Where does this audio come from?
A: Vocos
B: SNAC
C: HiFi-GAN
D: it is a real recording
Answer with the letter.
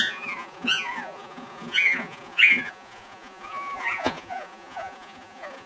A